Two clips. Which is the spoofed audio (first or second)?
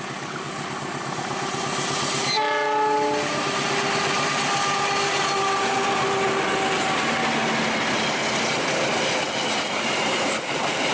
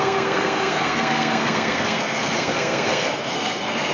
second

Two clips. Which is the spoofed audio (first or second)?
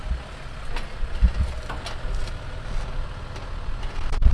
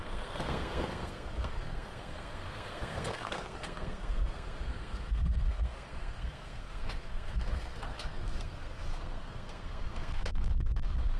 second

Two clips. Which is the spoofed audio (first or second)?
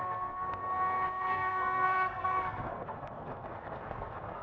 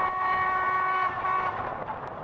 first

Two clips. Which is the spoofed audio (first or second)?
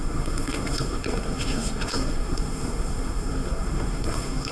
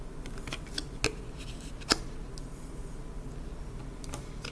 first